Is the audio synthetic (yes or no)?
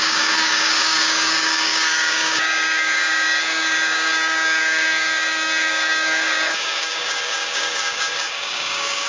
yes